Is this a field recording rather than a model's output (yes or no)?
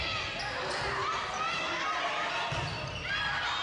yes